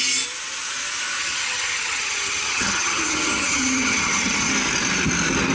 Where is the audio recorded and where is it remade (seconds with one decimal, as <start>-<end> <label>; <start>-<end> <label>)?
0.0-1.2 recorded; 1.2-4.5 remade; 4.5-5.5 recorded